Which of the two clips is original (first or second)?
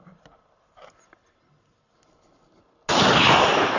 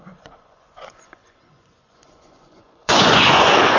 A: first